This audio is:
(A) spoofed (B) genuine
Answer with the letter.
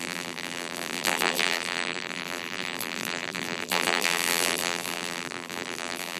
A